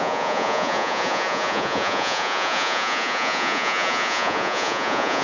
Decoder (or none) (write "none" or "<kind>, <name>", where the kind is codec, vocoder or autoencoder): vocoder, Vocos